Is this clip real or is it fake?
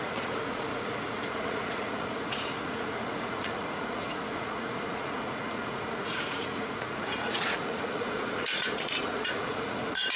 fake